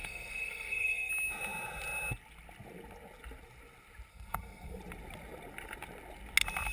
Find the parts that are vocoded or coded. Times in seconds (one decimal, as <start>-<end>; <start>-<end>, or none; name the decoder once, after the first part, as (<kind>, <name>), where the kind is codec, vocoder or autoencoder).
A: 0.0-1.1 (codec, SNAC); 4.1-4.8